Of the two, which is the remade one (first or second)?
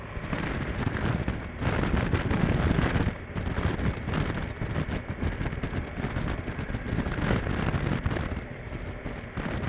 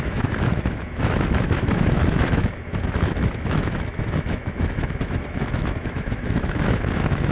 second